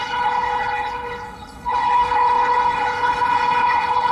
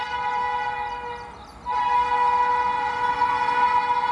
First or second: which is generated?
first